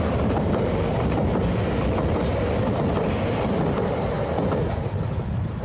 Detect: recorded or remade recorded